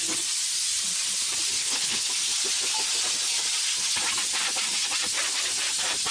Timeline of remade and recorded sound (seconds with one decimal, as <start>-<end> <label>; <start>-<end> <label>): 0.0-1.6 recorded; 1.6-2.1 remade; 2.1-6.1 recorded